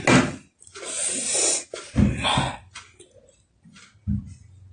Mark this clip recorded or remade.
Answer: recorded